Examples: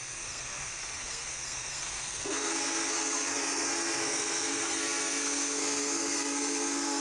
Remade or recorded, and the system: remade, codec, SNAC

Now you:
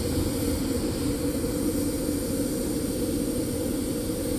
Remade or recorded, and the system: recorded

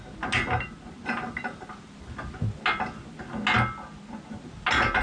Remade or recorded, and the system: recorded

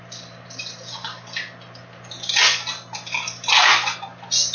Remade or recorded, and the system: recorded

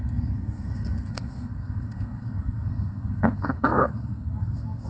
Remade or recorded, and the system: remade, codec, SNAC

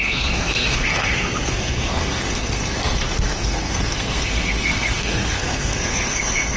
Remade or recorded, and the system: remade, codec, SNAC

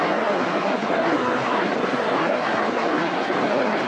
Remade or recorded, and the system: remade, codec, SNAC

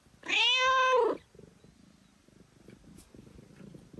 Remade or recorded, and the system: recorded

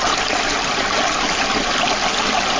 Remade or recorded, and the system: recorded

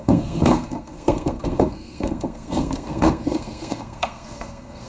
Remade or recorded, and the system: remade, codec, SNAC